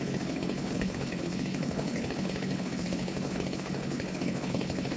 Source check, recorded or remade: remade